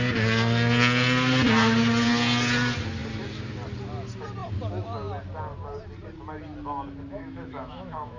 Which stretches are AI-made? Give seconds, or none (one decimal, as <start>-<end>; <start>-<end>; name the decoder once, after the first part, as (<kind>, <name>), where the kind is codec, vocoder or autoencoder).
7.1-8.2 (autoencoder, DAC-VAE)